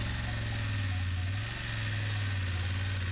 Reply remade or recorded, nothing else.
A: recorded